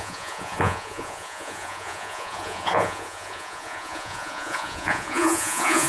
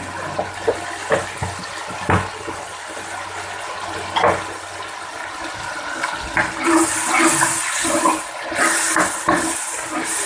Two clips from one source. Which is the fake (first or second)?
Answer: first